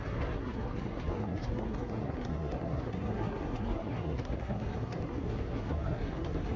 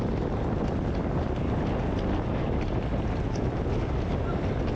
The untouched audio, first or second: second